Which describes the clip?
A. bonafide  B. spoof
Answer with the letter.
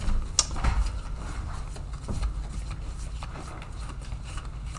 A